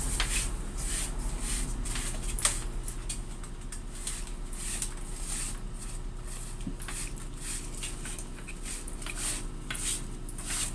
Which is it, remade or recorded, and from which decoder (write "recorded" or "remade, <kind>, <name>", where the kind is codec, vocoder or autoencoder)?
recorded